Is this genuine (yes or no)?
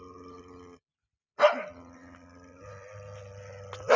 yes